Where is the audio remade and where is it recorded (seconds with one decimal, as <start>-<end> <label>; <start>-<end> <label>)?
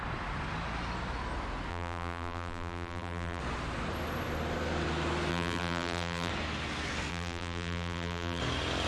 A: 0.0-1.7 recorded; 1.7-3.4 remade; 3.4-5.3 recorded; 5.3-6.3 remade; 6.3-7.1 recorded; 7.1-8.4 remade; 8.4-8.9 recorded